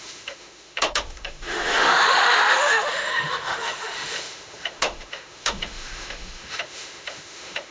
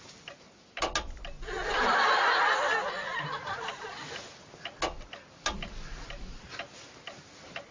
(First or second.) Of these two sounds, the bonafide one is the second